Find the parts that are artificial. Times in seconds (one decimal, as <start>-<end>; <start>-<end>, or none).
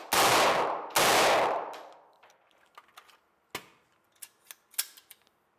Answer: none